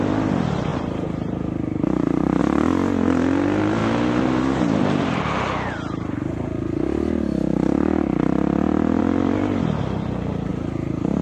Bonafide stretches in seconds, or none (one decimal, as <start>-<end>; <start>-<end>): 0.0-0.7; 2.4-10.5